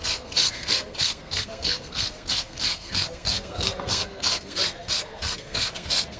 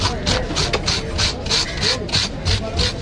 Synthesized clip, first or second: first